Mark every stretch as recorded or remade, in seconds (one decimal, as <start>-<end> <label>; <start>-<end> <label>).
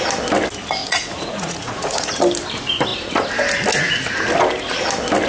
0.0-0.8 recorded; 0.8-2.2 remade; 2.2-5.3 recorded